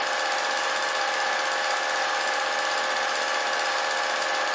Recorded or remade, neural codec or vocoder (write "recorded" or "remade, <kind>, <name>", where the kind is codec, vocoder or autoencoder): recorded